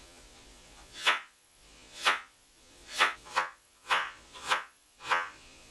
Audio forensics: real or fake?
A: fake